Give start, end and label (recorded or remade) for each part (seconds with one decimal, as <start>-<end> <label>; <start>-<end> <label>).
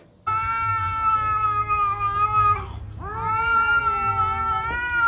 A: 0.0-5.1 recorded